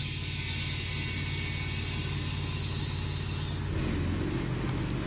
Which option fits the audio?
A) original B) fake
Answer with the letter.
A